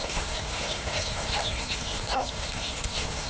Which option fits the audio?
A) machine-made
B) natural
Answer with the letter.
A